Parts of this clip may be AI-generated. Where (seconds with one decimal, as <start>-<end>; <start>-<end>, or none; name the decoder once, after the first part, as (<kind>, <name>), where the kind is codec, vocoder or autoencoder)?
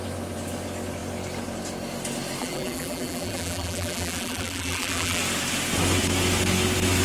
2.4-5.2 (vocoder, BigVGAN v2)